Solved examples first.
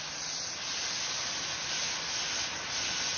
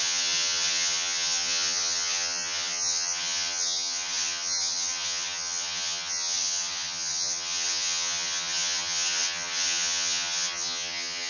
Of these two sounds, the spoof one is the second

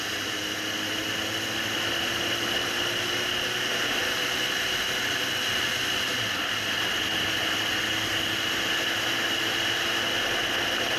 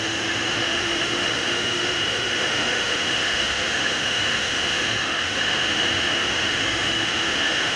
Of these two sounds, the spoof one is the second